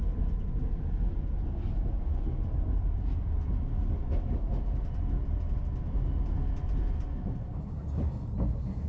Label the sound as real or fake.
real